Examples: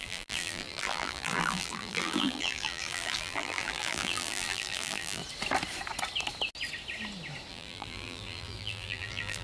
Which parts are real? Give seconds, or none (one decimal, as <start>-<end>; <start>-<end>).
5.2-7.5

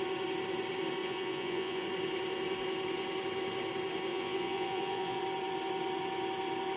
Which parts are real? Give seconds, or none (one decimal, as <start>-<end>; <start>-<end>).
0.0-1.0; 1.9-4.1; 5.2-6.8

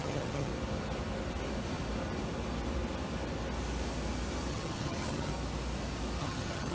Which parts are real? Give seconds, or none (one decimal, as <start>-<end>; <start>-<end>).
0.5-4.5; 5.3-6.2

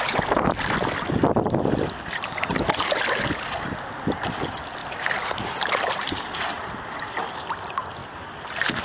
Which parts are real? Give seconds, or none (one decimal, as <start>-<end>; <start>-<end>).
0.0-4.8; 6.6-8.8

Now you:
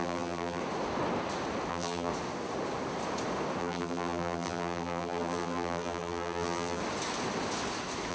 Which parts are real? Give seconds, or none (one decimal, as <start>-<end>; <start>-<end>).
0.6-1.7; 2.1-3.6; 6.8-8.1

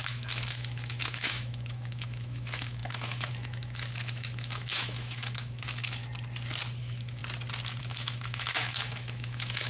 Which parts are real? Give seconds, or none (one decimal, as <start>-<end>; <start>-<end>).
6.0-6.8; 7.2-7.8

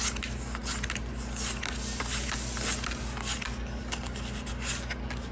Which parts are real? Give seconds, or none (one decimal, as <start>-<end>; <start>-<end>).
0.0-5.3